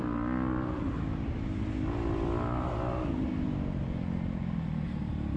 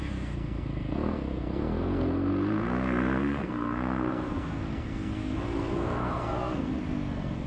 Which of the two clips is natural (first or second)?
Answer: first